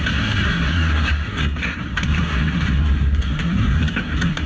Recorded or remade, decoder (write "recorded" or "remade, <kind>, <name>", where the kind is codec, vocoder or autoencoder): remade, codec, SNAC